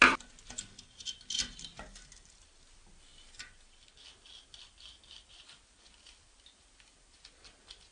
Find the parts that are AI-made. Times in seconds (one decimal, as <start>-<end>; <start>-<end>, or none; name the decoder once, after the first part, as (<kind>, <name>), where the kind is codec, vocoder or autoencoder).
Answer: none